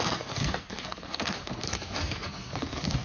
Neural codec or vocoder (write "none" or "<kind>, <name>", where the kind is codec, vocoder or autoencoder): codec, SNAC